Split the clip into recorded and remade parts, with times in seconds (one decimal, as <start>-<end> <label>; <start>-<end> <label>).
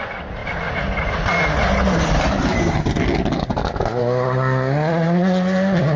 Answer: 0.0-6.0 recorded